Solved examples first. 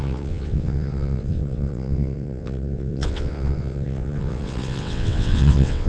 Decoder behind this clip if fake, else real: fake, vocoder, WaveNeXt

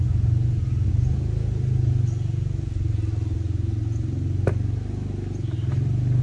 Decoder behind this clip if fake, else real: real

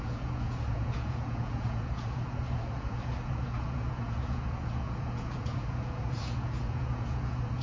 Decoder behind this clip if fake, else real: fake, vocoder, Vocos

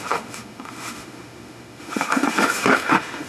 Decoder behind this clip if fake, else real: fake, autoencoder, DAC-VAE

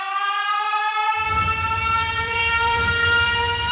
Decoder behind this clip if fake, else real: fake, vocoder, BigVGAN v2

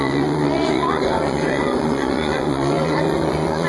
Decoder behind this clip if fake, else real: fake, vocoder, Vocos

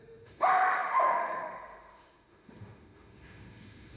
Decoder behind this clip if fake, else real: fake, autoencoder, DAC-VAE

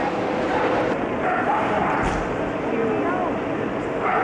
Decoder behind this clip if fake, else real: real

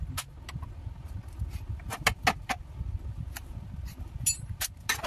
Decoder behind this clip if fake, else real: real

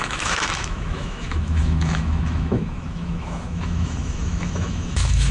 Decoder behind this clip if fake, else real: fake, autoencoder, DAC-VAE